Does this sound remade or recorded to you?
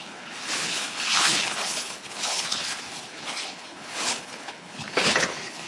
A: remade